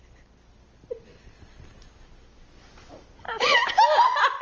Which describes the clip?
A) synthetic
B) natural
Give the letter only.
B